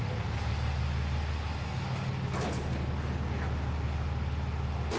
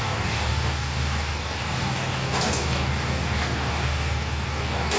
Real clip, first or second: first